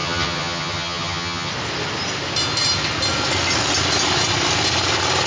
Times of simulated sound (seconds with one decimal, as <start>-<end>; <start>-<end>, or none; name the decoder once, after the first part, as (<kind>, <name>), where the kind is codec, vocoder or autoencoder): 0.0-1.5 (vocoder, HiFi-GAN)